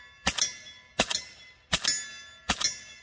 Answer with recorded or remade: recorded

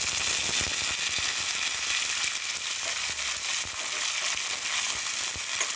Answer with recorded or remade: recorded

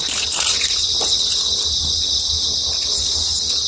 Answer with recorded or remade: recorded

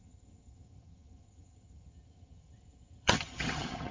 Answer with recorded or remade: remade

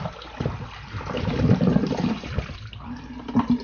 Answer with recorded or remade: recorded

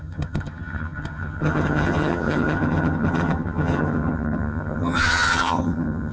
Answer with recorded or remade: remade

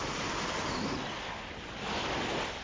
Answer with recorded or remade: recorded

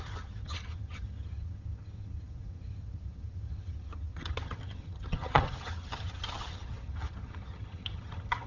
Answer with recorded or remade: remade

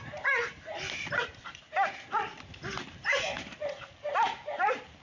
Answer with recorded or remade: recorded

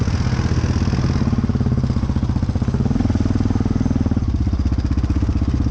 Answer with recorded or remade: recorded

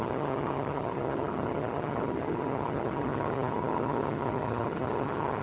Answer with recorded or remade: remade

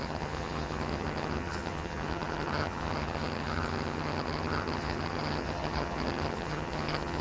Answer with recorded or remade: remade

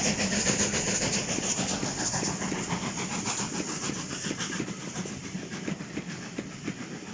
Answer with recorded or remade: recorded